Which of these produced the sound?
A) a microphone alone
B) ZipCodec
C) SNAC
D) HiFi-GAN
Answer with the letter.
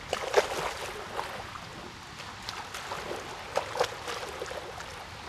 A